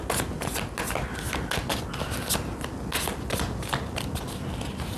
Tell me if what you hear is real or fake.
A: real